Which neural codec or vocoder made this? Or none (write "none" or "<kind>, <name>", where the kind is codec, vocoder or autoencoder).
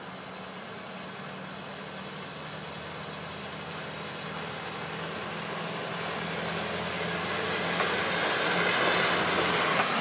none